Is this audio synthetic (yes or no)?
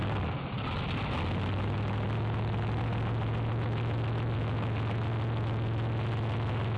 no